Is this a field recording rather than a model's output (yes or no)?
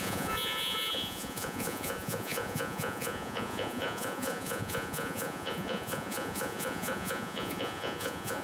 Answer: no